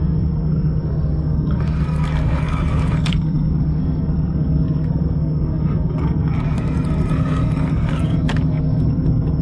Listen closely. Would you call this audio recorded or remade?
remade